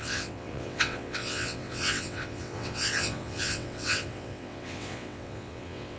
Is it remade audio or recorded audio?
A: remade